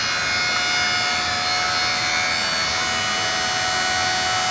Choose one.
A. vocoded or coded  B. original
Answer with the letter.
B